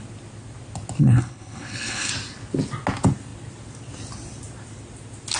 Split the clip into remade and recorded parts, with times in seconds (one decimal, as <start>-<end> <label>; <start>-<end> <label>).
0.0-1.0 recorded; 1.0-2.1 remade; 2.1-5.4 recorded